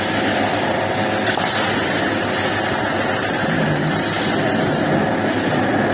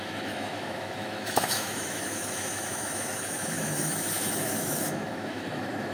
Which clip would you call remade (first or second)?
second